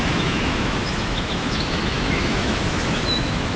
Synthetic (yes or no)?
yes